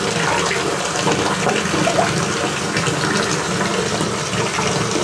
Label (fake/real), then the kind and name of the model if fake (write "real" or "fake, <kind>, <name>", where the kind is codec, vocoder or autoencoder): real